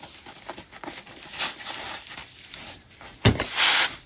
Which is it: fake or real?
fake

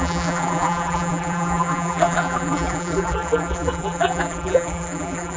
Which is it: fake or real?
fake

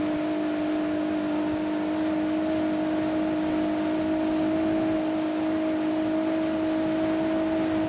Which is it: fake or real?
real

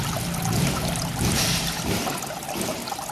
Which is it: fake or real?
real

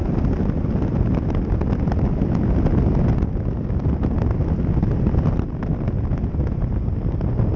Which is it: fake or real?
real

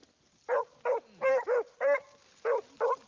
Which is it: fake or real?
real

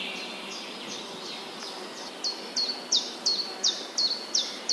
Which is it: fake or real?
real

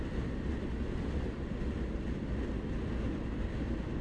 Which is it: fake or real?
real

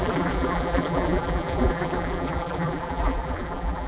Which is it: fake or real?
fake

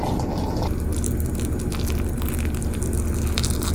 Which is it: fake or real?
real